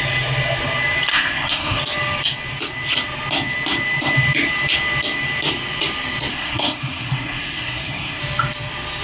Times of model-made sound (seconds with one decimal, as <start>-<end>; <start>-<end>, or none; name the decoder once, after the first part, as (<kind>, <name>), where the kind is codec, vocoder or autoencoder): 1.1-1.8 (codec, SNAC); 6.3-8.2